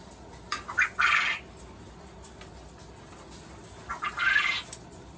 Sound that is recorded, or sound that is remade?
recorded